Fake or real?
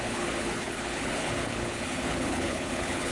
fake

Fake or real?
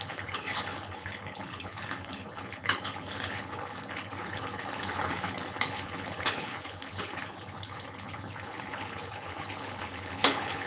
fake